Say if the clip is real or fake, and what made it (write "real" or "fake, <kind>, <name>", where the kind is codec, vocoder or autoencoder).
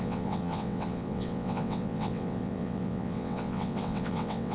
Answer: fake, vocoder, WaveNeXt